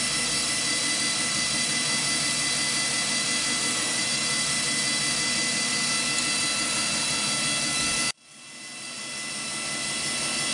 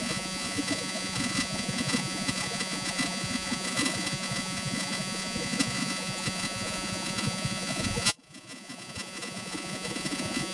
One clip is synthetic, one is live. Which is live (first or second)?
first